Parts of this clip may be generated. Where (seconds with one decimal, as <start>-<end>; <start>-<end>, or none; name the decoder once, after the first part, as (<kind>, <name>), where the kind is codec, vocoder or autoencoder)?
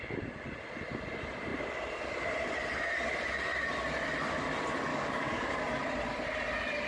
4.9-5.6 (codec, DAC)